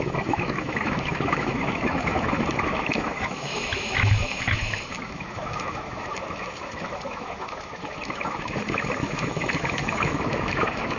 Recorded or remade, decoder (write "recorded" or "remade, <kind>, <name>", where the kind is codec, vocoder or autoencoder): remade, autoencoder, DAC-VAE